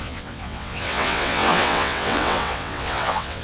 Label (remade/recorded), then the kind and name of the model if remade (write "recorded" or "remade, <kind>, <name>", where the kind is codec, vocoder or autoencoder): remade, vocoder, WaveNeXt